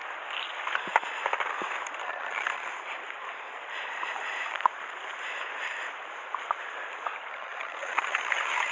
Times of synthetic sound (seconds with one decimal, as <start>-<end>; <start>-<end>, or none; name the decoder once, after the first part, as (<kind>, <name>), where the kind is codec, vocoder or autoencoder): 2.0-2.7 (vocoder, HiFi-GAN); 7.3-8.7